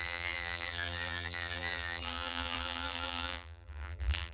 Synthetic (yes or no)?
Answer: yes